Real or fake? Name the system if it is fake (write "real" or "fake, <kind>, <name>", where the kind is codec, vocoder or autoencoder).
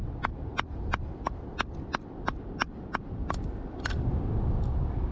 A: real